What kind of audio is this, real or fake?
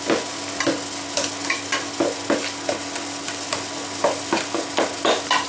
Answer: real